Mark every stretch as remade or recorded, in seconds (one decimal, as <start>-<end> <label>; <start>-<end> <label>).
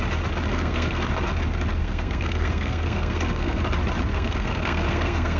0.0-0.5 recorded; 0.5-1.1 remade; 1.1-1.8 recorded; 1.8-3.6 remade; 3.6-4.1 recorded; 4.1-5.4 remade